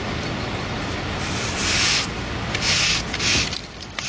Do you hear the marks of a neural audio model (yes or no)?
no